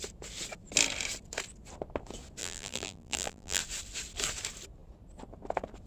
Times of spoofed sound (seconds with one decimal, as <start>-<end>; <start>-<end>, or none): 2.4-3.6